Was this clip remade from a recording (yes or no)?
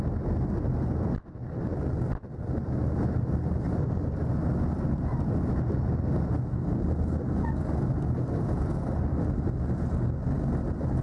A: no